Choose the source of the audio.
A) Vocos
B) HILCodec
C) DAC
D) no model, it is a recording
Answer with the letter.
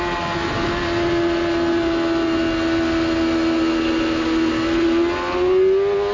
D